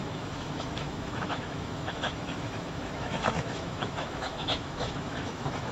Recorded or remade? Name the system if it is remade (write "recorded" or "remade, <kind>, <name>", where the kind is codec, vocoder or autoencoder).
remade, autoencoder, DAC-VAE